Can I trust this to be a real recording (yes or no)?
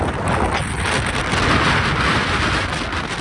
yes